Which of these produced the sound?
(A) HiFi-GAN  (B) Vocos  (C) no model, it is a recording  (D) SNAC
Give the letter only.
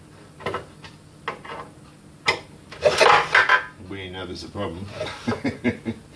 C